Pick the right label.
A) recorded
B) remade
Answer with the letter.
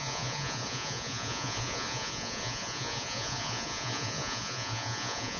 B